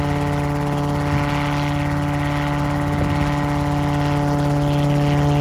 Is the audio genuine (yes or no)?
yes